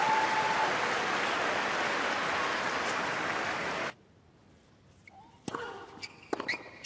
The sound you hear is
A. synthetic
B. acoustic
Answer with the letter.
B